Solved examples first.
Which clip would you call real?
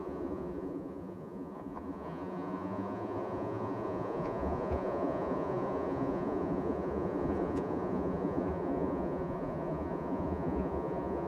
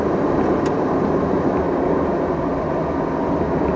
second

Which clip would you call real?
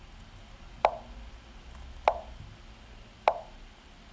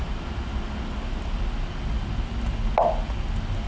second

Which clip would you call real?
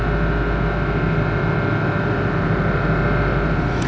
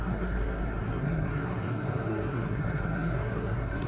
first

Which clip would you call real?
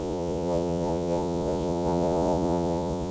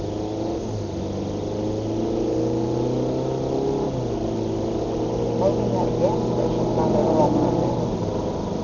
second